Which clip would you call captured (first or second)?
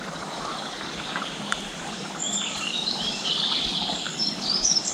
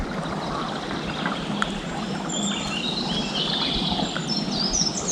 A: second